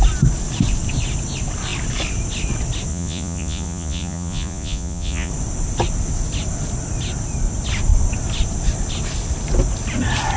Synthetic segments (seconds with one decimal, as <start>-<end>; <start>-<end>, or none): 2.9-5.3